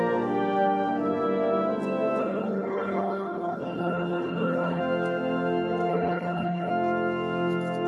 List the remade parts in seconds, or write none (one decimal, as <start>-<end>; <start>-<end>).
2.2-4.8; 5.9-6.7